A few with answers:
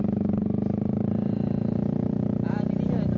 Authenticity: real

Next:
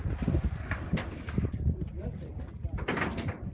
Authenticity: real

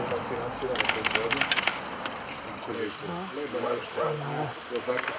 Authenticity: real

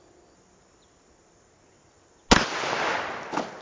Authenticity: real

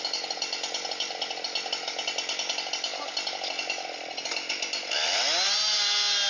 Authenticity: real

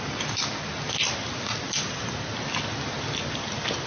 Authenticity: real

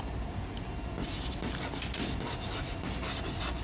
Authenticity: real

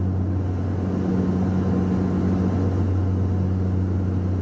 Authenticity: real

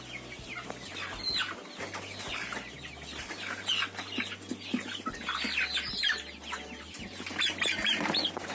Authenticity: real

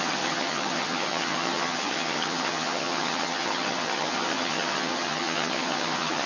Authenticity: fake